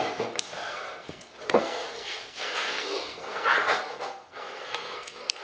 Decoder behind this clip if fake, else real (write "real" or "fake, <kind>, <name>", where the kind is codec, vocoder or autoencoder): fake, codec, SNAC